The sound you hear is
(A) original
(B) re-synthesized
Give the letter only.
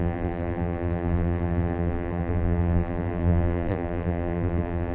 B